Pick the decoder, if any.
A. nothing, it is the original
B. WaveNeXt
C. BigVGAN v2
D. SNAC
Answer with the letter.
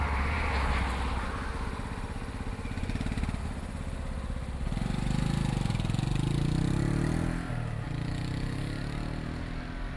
A